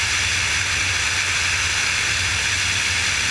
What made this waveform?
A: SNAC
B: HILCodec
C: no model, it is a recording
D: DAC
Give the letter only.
C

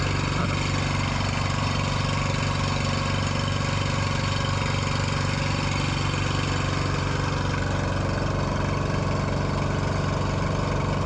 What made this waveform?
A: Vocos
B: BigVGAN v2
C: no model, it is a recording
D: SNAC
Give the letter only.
C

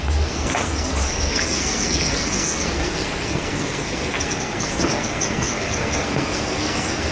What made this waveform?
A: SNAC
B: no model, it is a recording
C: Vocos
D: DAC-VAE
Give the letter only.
A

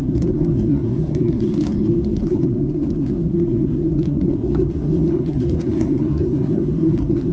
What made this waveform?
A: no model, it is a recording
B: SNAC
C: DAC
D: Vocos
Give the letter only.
B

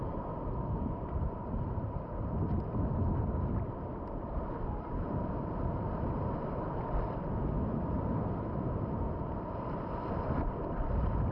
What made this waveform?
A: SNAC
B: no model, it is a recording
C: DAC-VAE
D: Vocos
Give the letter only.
B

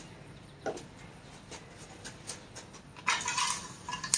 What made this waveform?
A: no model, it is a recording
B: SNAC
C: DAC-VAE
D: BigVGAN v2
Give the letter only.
A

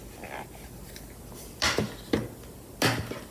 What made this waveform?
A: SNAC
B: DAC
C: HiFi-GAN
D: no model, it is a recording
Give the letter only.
D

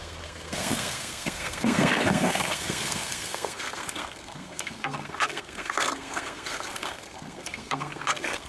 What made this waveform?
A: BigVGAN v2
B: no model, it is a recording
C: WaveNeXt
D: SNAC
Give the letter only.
D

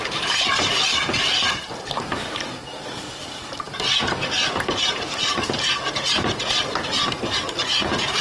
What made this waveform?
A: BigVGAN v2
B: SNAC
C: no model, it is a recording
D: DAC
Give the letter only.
C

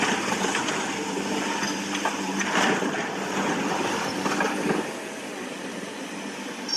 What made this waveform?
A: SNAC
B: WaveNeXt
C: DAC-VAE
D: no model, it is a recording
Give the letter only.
D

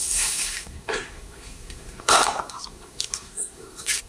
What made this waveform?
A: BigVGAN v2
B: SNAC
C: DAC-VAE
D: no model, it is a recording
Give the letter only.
B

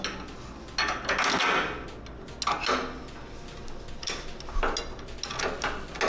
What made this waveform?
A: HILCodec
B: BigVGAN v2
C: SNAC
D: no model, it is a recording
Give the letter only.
D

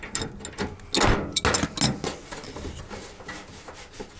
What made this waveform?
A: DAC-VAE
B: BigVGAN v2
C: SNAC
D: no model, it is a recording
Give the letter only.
D